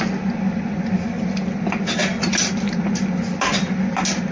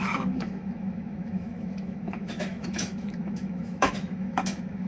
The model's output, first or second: second